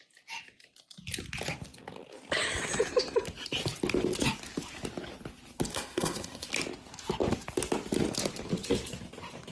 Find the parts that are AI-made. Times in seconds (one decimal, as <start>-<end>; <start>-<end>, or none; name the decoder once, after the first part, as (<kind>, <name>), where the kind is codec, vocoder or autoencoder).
5.7-6.5 (codec, SNAC)